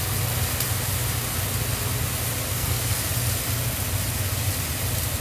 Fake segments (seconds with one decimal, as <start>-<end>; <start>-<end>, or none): 2.5-3.0

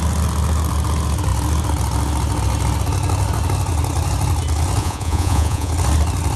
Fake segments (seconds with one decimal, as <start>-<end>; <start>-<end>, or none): 4.8-5.7

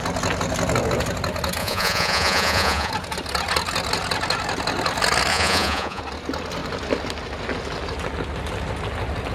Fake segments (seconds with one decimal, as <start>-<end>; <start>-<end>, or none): 1.6-2.9; 5.3-6.0

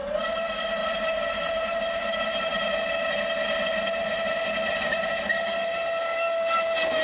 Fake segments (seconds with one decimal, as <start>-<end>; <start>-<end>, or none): none

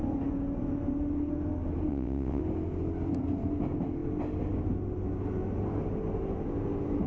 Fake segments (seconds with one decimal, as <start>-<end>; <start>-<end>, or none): 1.9-2.4

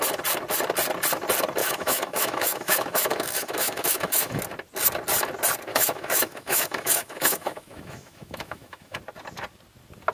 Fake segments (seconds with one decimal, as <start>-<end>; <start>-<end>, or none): 1.6-4.4; 5.7-9.0

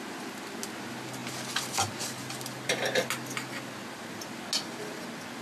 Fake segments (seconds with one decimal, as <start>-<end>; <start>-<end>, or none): none

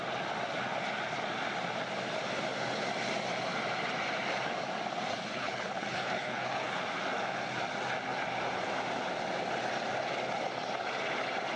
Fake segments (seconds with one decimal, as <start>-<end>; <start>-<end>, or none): 5.1-6.8